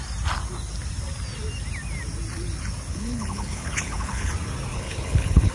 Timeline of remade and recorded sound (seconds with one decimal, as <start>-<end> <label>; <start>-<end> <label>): 0.0-2.9 recorded; 2.9-4.3 remade; 4.3-4.7 recorded; 4.7-5.5 remade